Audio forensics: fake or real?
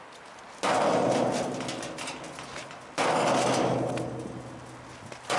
real